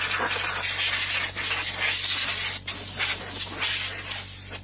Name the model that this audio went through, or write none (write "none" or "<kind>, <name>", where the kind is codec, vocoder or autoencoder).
none